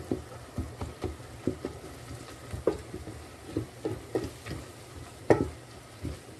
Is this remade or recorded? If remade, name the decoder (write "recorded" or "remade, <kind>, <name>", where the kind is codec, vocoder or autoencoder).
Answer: recorded